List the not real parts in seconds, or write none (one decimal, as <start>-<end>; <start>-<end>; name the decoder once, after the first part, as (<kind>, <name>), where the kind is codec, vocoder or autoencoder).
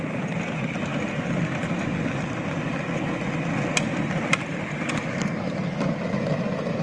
none